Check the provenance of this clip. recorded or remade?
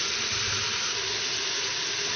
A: recorded